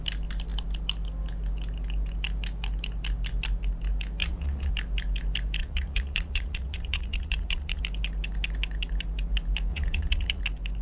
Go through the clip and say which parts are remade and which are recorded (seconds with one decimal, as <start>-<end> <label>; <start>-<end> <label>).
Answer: 0.0-4.2 recorded; 4.2-4.7 remade; 4.7-5.6 recorded; 5.6-7.8 remade; 7.8-9.7 recorded; 9.7-10.4 remade; 10.4-10.8 recorded